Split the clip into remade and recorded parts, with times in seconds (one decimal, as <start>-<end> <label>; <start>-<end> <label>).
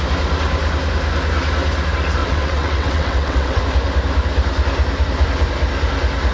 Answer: 0.0-2.2 recorded; 2.2-3.6 remade; 3.6-6.3 recorded